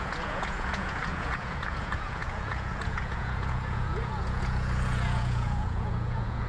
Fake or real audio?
fake